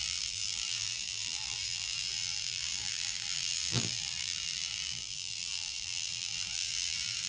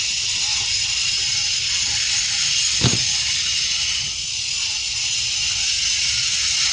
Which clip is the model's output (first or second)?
first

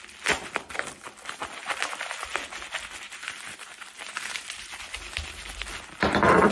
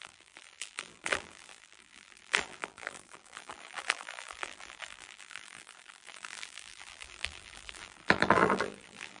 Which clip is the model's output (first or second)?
second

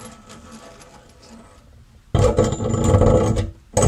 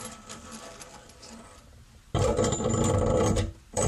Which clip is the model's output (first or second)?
second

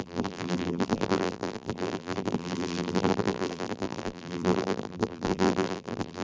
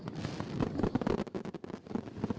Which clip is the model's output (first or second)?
first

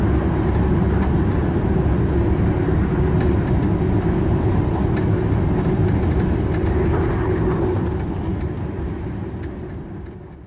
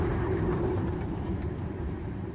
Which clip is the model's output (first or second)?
second